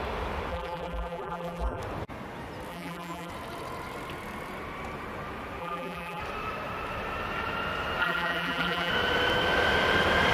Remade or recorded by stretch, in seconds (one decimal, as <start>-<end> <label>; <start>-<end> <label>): 0.0-0.5 recorded; 0.5-1.8 remade; 1.8-2.7 recorded; 2.7-3.3 remade; 3.3-5.6 recorded; 5.6-6.2 remade; 6.2-8.0 recorded; 8.0-8.9 remade; 8.9-10.3 recorded